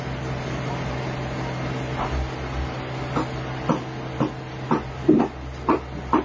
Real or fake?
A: real